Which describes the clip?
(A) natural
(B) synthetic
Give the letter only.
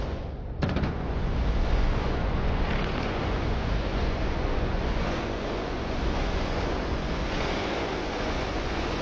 B